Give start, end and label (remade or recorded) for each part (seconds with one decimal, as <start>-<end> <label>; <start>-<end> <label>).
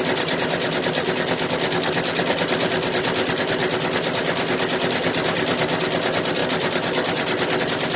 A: 0.0-8.0 recorded